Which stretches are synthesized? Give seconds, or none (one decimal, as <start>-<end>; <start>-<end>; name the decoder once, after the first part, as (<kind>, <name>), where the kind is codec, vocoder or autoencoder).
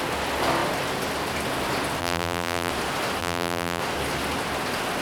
2.0-2.7 (vocoder, BigVGAN v2); 3.2-3.8